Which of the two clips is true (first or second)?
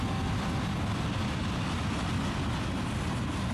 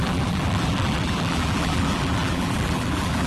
first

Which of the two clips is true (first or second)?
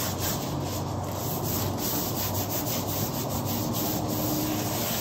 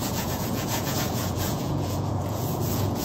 first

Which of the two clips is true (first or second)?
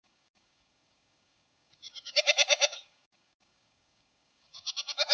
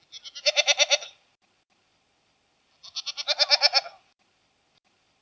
second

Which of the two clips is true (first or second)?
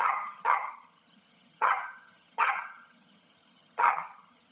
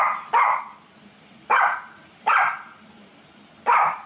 second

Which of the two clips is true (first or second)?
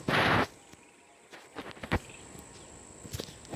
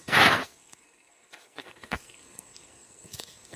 first